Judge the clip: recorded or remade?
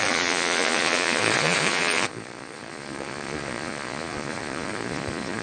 remade